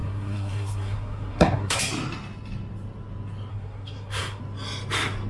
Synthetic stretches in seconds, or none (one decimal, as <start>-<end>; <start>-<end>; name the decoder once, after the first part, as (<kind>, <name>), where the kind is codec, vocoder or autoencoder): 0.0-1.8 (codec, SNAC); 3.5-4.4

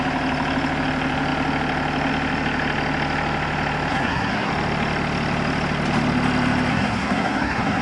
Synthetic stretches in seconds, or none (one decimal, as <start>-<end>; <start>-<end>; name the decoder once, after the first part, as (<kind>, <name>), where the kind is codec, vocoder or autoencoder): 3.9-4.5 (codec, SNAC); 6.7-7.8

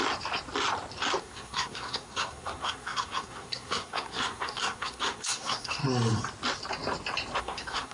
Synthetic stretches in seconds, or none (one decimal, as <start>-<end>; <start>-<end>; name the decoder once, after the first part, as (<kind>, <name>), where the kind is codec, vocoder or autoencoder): 1.2-5.8 (codec, SNAC); 7.4-7.9

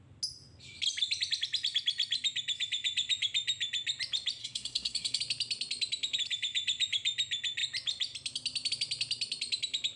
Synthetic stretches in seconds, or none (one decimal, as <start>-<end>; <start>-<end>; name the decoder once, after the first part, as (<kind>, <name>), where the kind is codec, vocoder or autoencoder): 4.4-5.2 (codec, SNAC)

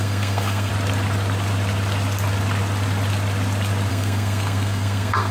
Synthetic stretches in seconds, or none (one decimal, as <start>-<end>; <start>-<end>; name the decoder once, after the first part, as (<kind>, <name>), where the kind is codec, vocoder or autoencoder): 0.0-0.7 (codec, SNAC); 3.9-5.3

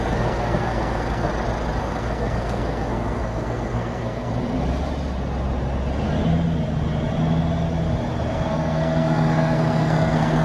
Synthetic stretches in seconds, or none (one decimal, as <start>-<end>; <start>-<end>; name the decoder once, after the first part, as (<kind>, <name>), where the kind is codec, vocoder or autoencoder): 0.0-1.3 (codec, SNAC); 1.8-4.3; 8.3-10.4

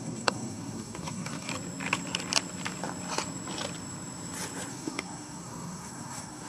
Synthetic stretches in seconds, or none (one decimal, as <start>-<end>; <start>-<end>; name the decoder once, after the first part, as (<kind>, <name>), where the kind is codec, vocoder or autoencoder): 0.0-1.5 (codec, SNAC); 4.7-6.5

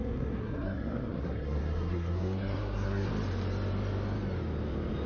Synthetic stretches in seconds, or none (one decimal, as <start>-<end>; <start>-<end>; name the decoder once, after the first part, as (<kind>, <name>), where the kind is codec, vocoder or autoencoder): 0.0-3.1 (codec, SNAC)